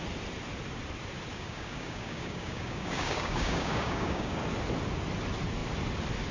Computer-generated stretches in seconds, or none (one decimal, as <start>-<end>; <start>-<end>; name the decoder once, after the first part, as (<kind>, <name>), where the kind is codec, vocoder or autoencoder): 1.3-4.4 (codec, DAC)